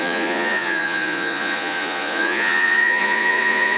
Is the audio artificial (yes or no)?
yes